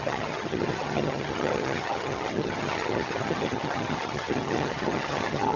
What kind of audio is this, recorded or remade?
remade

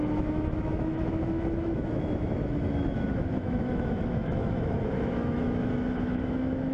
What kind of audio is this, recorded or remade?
remade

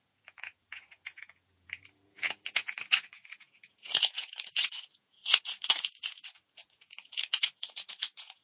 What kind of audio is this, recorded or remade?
remade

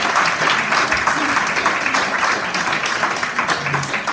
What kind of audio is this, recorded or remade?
recorded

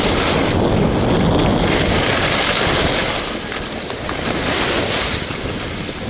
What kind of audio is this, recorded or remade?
recorded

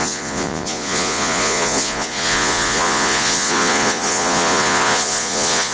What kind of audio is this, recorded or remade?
remade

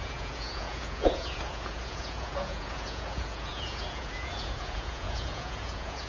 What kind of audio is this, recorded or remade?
remade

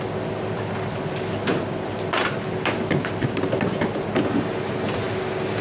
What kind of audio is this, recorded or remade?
recorded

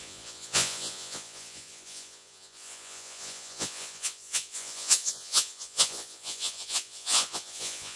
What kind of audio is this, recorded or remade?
remade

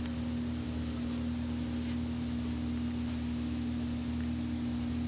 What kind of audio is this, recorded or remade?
recorded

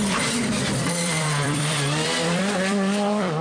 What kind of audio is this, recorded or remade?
remade